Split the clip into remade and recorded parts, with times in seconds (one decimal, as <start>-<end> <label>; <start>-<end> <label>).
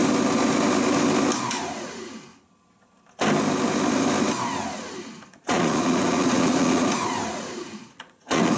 0.0-1.6 recorded; 1.6-2.3 remade; 2.3-5.0 recorded; 5.0-8.6 remade